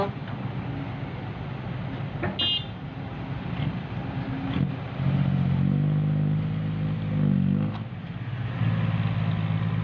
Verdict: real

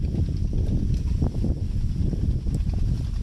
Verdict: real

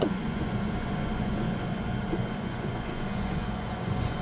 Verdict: fake